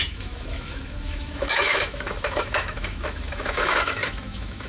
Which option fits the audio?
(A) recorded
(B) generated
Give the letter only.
B